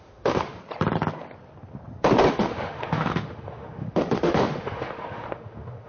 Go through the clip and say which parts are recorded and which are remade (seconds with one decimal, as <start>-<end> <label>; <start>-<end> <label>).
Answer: 0.0-0.6 remade; 0.6-2.3 recorded; 2.3-5.9 remade